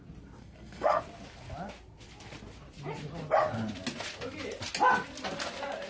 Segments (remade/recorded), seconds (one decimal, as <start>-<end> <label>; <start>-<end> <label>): 0.0-0.4 recorded; 0.4-1.0 remade; 1.0-5.9 recorded